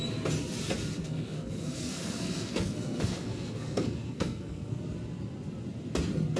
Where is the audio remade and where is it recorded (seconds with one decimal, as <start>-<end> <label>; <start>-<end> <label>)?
0.0-1.0 recorded; 1.0-4.8 remade; 4.8-6.4 recorded